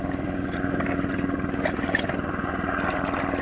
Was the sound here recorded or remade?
recorded